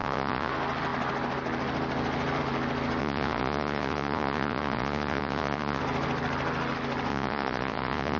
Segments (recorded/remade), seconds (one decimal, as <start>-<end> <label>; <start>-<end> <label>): 0.0-0.5 remade; 0.5-3.0 recorded; 3.0-5.8 remade; 5.8-7.1 recorded; 7.1-8.2 remade